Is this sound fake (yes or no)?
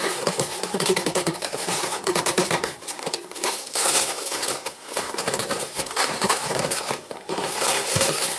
yes